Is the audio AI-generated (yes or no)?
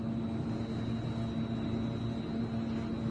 no